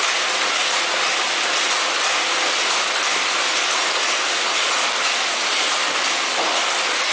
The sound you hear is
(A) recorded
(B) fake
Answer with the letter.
A